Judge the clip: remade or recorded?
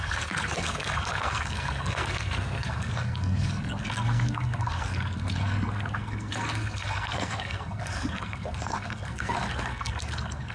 remade